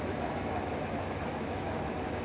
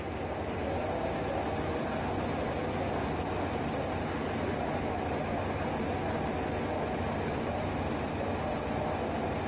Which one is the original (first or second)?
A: second